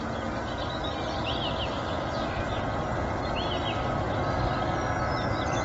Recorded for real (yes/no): yes